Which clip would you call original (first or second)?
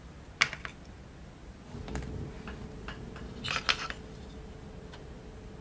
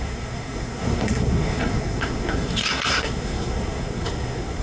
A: first